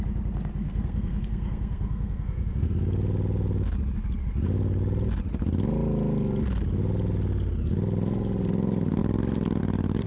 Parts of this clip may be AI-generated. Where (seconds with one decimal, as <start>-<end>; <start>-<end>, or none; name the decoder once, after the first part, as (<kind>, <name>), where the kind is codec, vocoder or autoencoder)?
0.6-2.7 (codec, SNAC)